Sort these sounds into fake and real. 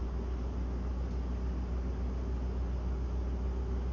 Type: real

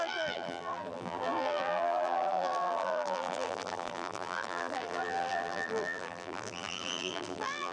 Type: fake